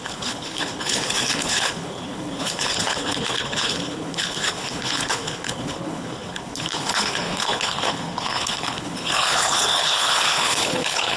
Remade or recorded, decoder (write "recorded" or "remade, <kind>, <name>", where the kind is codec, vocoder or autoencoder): remade, codec, HILCodec